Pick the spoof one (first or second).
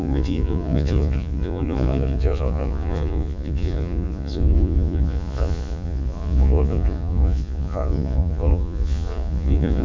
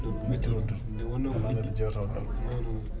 first